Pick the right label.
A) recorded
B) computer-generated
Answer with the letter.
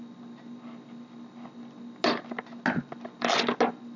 A